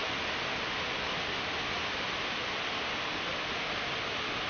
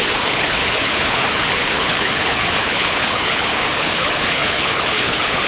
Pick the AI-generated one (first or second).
second